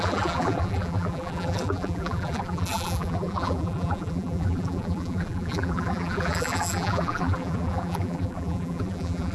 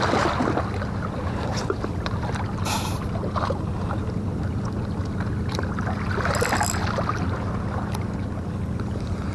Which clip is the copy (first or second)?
first